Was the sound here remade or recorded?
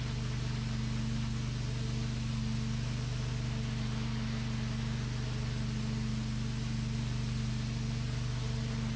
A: recorded